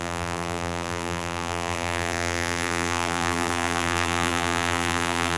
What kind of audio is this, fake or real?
fake